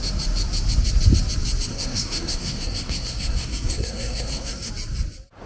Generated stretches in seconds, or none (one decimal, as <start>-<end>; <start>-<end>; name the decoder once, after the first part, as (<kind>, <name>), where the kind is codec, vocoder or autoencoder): 1.7-4.7 (codec, SNAC)